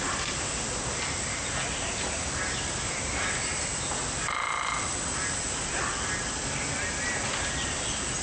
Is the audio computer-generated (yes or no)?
no